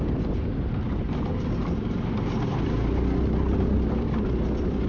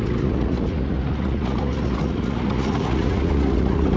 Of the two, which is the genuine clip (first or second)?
first